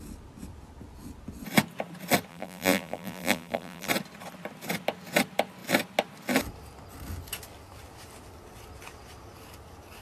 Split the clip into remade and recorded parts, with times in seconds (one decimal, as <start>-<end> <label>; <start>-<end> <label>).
0.0-2.3 recorded; 2.3-3.9 remade; 3.9-10.0 recorded